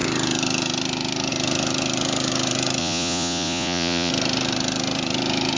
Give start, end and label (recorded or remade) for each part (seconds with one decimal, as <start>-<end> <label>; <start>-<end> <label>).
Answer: 0.0-2.8 recorded; 2.8-4.1 remade; 4.1-5.6 recorded